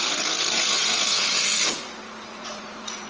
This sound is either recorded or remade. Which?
remade